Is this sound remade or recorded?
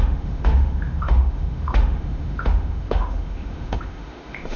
remade